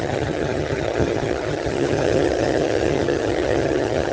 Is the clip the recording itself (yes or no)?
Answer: no